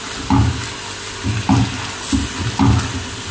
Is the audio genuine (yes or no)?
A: yes